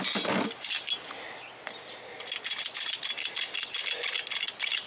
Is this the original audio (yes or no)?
yes